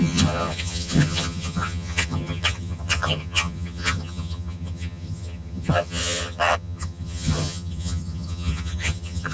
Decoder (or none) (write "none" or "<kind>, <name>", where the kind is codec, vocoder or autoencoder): vocoder, HiFi-GAN